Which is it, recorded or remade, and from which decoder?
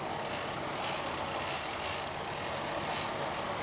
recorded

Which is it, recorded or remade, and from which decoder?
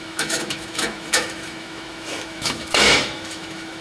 remade, autoencoder, DAC-VAE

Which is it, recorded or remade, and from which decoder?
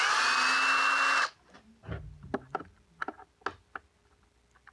recorded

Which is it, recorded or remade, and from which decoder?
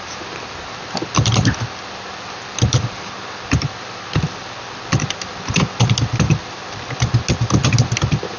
recorded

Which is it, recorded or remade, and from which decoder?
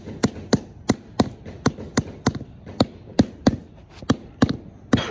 recorded